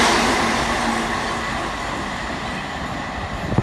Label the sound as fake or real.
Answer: real